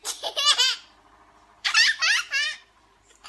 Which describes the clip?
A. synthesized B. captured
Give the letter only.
A